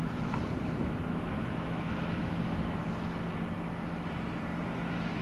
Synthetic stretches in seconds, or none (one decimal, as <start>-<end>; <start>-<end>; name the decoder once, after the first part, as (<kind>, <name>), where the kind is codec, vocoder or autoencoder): 0.0-2.8 (autoencoder, DAC-VAE); 4.6-5.2